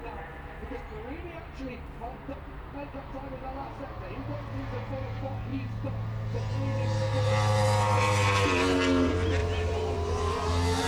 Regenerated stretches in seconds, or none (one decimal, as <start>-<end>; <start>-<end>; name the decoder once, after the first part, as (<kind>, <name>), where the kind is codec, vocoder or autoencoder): 9.4-10.5 (vocoder, BigVGAN v2)